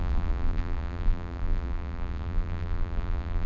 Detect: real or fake fake